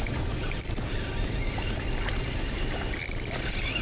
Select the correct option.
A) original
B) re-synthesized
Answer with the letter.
A